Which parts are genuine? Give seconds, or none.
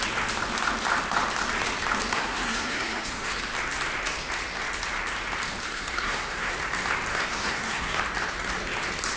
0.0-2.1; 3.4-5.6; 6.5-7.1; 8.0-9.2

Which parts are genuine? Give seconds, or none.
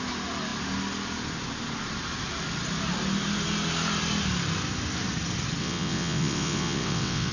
0.0-5.6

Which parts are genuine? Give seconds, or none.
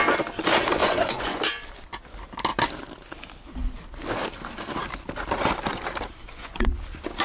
0.0-0.8; 1.4-6.2; 6.8-7.2